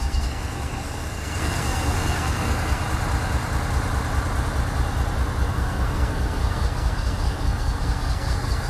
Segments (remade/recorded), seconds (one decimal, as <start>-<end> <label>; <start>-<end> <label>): 0.0-2.8 remade; 2.8-5.5 recorded; 5.5-8.7 remade